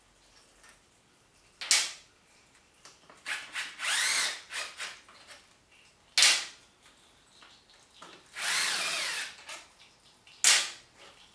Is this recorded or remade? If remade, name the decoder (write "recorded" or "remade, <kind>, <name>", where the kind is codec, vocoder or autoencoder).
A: recorded